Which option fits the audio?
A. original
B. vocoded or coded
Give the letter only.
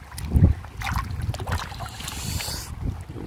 A